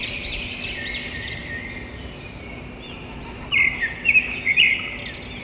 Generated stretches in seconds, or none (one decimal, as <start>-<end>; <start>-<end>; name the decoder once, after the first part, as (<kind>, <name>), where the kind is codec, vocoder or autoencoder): none